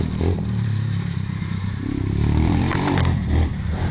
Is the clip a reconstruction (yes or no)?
yes